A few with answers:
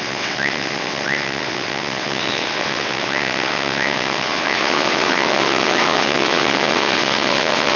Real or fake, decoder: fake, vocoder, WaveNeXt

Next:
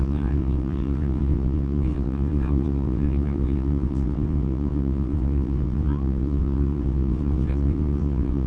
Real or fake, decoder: fake, vocoder, WaveNeXt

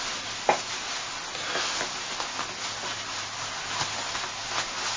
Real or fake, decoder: real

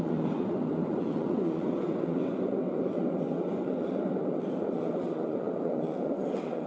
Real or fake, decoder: fake, vocoder, WaveNeXt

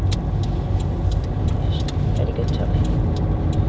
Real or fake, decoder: real